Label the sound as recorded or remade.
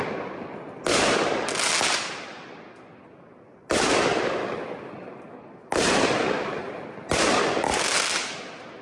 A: recorded